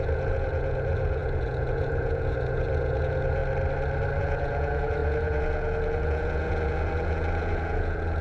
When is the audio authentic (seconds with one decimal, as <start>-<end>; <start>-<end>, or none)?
3.4-4.2